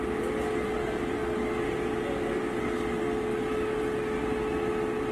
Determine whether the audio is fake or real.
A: real